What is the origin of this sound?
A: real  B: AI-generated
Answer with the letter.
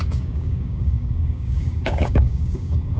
B